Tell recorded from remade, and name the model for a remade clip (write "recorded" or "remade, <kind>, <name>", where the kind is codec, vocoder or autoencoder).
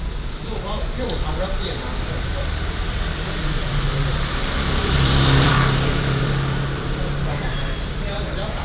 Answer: remade, vocoder, BigVGAN v2